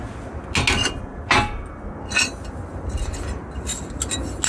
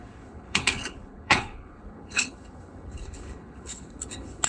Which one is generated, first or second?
second